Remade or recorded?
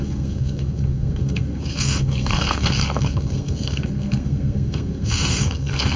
remade